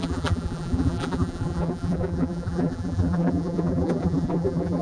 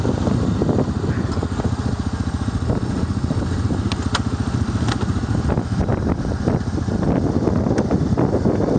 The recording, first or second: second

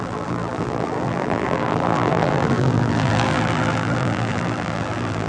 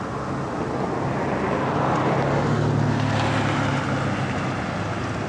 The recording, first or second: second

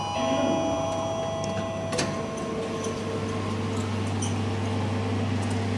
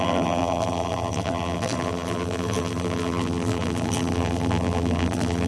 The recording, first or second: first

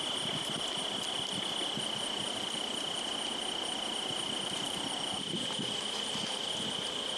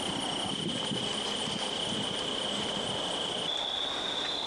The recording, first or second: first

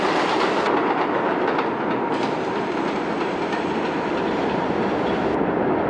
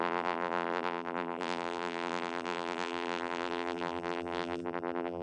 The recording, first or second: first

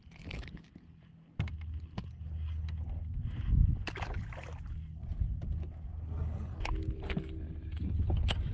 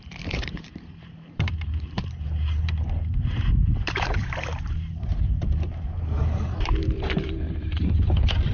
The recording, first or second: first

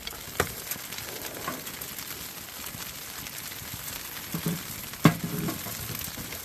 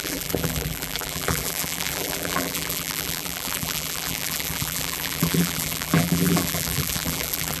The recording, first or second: first